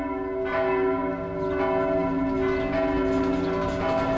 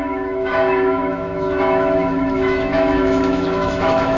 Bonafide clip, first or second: first